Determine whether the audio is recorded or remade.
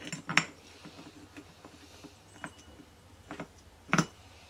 recorded